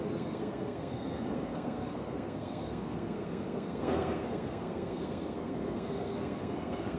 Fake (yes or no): yes